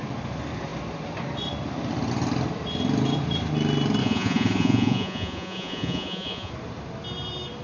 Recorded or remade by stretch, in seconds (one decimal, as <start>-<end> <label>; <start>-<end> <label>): 0.0-4.0 recorded; 4.0-6.5 remade; 6.5-7.6 recorded